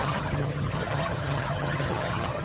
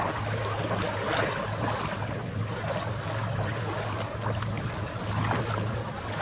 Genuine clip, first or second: second